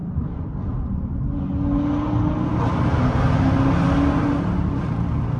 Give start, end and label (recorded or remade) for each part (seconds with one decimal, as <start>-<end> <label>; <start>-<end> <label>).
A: 0.0-5.4 recorded